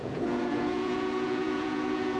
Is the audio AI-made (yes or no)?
yes